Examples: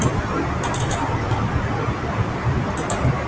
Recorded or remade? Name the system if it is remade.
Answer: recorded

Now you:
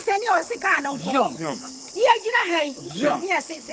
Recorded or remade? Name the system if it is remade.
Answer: remade, codec, HILCodec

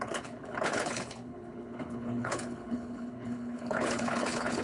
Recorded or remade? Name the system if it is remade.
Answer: remade, codec, HILCodec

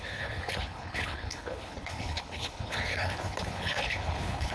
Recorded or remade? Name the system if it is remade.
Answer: remade, codec, HILCodec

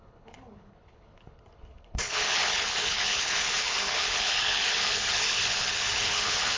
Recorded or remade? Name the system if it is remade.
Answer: remade, codec, HILCodec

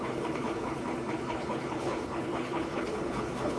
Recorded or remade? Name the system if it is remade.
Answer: remade, codec, HILCodec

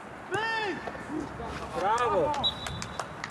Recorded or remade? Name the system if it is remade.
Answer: recorded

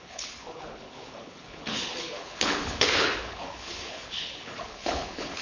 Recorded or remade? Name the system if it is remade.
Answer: remade, codec, HILCodec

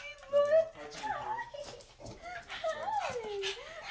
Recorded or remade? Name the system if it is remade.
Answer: recorded